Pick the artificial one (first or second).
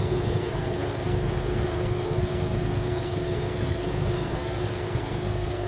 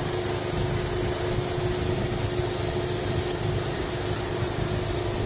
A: first